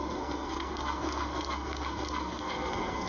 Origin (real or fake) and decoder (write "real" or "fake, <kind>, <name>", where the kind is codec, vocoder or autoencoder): fake, codec, SNAC